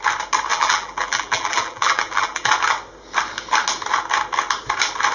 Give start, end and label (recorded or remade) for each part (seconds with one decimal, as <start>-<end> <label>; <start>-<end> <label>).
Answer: 0.0-0.5 recorded; 0.5-2.5 remade; 2.5-5.1 recorded